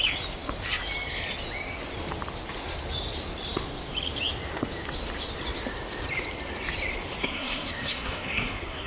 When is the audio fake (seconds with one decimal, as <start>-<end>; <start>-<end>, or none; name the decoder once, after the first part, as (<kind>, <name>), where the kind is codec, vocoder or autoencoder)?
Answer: 7.2-8.9 (codec, SNAC)